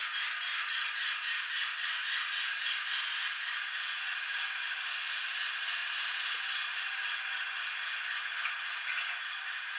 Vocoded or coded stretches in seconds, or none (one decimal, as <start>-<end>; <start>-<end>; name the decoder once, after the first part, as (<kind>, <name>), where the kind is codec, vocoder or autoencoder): 5.8-6.4 (vocoder, BigVGAN v2)